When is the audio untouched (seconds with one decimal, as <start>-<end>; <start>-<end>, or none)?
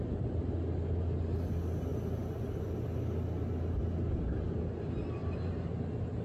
0.0-5.2; 5.8-6.2